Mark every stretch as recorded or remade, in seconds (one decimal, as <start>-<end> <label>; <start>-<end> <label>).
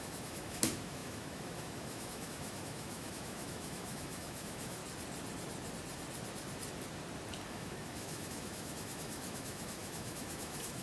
0.0-4.8 remade; 4.8-7.5 recorded; 7.5-10.8 remade